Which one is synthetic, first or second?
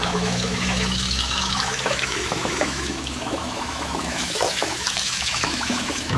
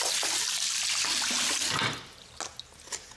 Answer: first